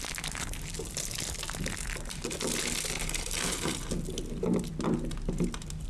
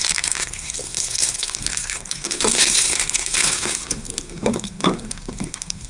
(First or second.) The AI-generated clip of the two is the second